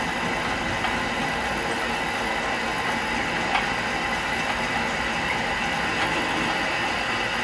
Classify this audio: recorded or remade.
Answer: recorded